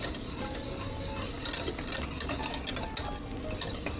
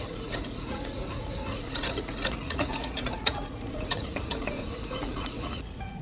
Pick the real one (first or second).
first